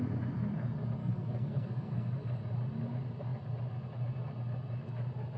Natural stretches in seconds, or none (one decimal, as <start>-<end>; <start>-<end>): 0.0-1.0; 2.4-5.4